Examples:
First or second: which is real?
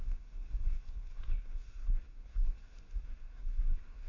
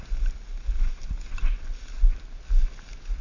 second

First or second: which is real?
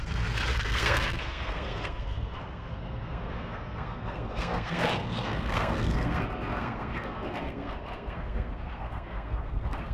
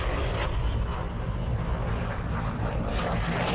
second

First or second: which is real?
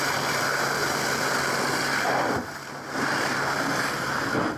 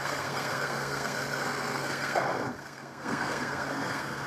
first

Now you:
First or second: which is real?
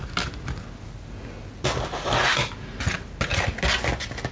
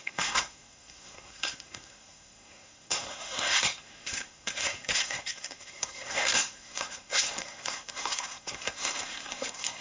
first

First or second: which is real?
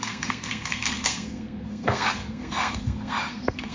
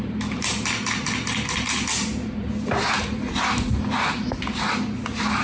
second